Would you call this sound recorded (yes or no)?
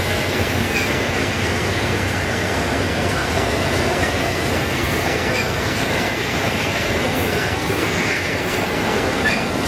no